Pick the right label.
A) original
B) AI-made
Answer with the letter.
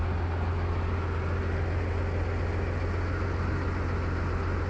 A